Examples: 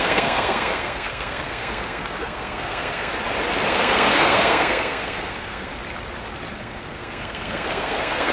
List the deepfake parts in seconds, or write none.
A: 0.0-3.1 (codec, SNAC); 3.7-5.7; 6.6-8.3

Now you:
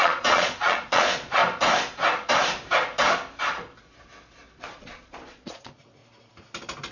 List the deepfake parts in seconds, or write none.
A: 0.0-1.4 (vocoder, Vocos); 4.6-6.0

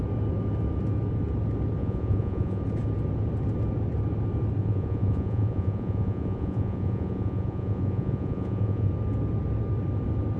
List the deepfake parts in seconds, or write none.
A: 1.8-2.6 (vocoder, Vocos); 4.6-8.9

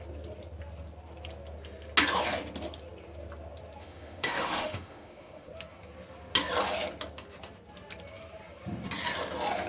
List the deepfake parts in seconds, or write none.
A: 3.8-5.5 (autoencoder, DAC-VAE)

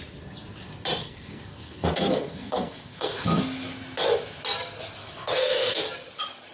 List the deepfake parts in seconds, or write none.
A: 1.0-3.4 (codec, SNAC); 5.0-5.8